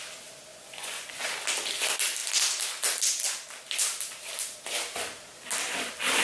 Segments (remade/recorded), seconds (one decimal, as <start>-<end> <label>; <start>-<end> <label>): 0.0-0.5 recorded; 0.5-1.3 remade; 1.3-6.2 recorded